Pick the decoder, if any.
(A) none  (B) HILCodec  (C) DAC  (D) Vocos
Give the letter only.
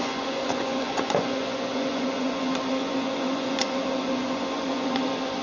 D